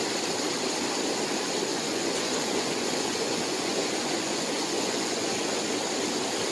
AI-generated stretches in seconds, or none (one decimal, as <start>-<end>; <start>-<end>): 1.7-5.6